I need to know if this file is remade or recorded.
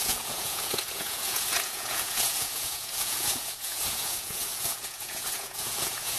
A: remade